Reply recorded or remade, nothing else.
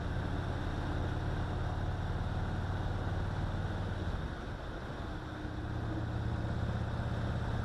recorded